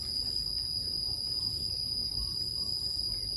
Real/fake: real